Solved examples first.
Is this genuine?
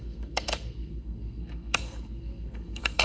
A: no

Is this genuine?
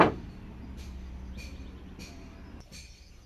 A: yes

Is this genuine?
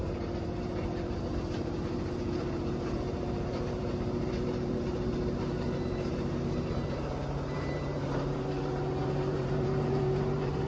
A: no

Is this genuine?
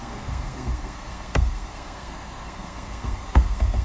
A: no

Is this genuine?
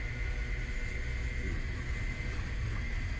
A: yes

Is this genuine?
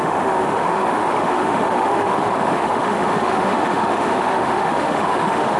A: no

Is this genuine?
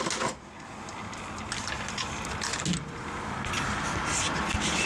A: yes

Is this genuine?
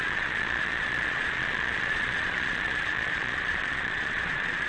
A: no